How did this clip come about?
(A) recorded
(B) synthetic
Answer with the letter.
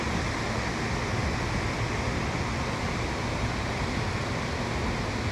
A